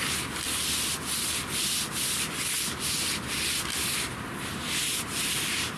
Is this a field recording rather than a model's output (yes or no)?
yes